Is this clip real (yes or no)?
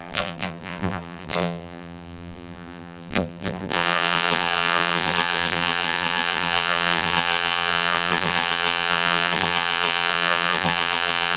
no